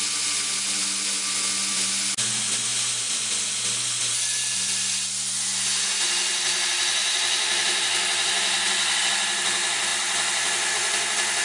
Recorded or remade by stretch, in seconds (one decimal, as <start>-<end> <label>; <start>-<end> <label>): 0.0-11.4 recorded